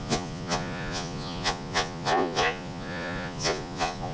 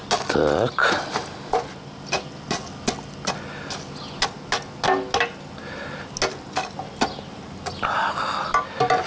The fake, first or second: first